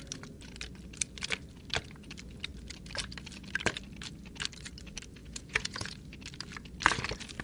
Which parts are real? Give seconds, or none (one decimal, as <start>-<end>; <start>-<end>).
0.0-5.2; 6.0-7.4